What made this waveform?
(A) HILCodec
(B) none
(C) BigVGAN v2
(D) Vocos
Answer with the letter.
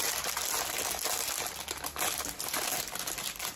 B